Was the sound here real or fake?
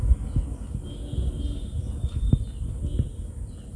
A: real